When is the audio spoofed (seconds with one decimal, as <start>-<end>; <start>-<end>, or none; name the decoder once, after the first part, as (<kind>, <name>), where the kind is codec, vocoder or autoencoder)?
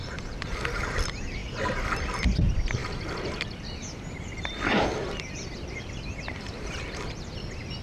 0.0-1.4 (vocoder, BigVGAN v2); 2.4-7.8